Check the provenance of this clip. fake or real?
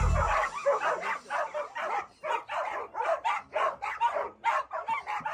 real